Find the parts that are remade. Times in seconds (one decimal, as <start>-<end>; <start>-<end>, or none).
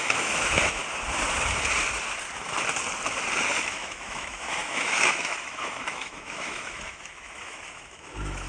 0.0-0.8; 3.5-8.5